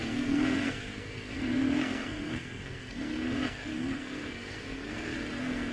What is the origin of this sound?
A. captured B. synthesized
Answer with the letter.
B